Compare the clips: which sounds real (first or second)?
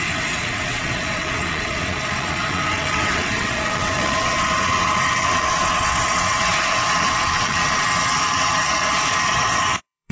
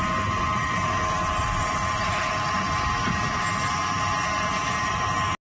second